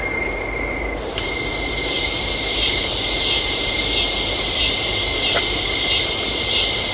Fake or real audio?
fake